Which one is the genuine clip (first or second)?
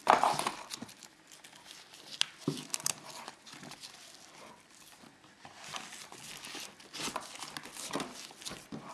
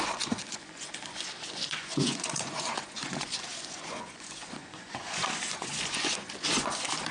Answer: first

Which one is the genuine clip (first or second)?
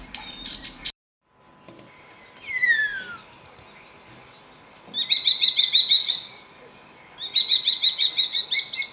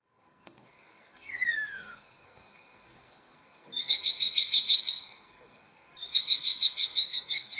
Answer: first